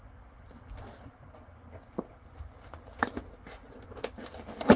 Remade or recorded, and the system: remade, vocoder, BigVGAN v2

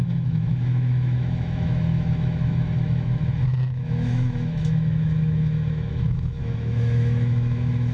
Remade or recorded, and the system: remade, autoencoder, DAC-VAE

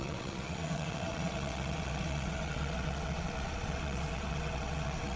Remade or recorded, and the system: remade, vocoder, WaveNeXt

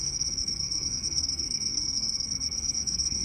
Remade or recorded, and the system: remade, codec, SNAC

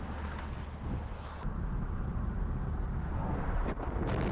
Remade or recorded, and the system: recorded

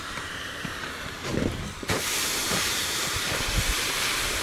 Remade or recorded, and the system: remade, vocoder, BigVGAN v2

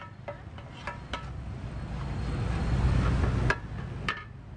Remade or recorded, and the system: recorded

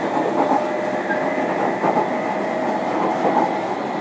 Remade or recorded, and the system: recorded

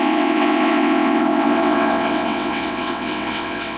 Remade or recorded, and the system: remade, vocoder, WaveNeXt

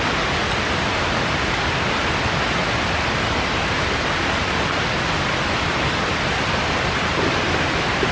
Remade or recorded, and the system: recorded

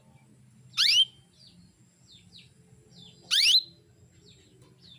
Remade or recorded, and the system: recorded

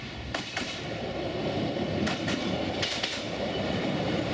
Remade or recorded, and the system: remade, vocoder, BigVGAN v2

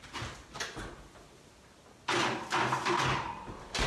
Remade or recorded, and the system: recorded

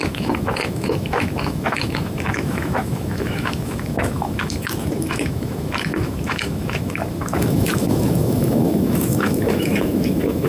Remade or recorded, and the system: remade, autoencoder, DAC-VAE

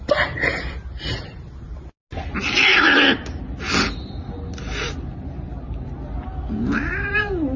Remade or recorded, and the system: recorded